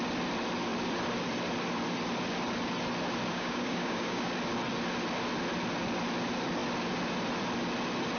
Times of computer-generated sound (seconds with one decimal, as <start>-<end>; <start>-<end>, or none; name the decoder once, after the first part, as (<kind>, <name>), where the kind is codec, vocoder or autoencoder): 3.3-4.3 (codec, DAC)